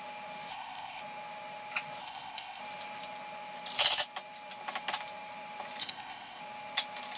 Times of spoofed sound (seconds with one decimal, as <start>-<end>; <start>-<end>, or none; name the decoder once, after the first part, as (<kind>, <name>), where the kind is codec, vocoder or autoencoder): 0.5-1.0 (codec, ZipCodec); 2.0-2.6; 5.8-6.4